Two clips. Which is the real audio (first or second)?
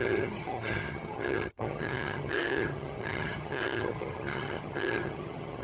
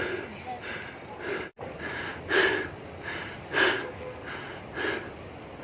second